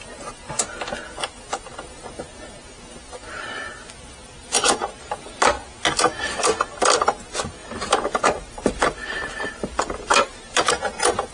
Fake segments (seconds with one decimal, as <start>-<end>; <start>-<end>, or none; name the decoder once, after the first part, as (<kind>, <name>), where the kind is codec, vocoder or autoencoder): 4.2-5.1 (vocoder, BigVGAN v2); 7.6-10.7